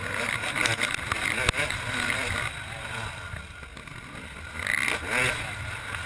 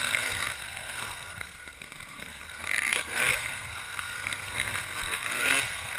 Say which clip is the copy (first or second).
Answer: second